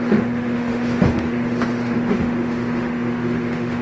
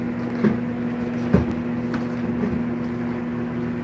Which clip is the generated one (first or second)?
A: first